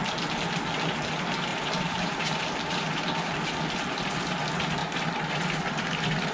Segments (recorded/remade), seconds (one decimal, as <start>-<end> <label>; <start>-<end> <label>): 0.0-1.5 recorded; 1.5-2.4 remade; 2.4-4.8 recorded; 4.8-5.4 remade; 5.4-6.3 recorded